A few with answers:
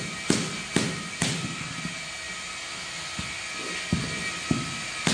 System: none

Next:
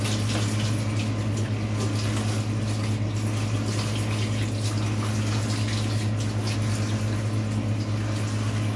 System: none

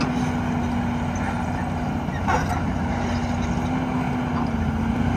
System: none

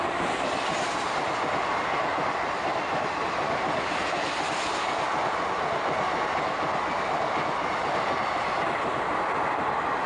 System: none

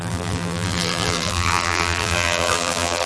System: vocoder, BigVGAN v2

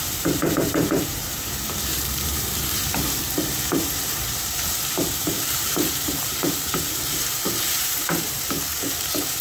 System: vocoder, BigVGAN v2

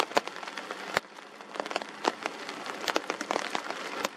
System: vocoder, BigVGAN v2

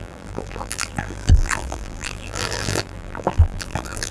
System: vocoder, BigVGAN v2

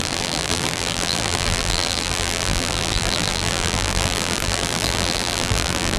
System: vocoder, BigVGAN v2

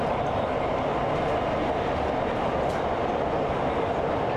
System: none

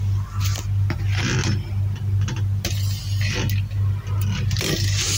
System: none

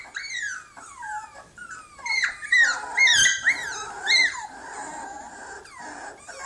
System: vocoder, BigVGAN v2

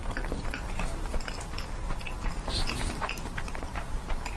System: none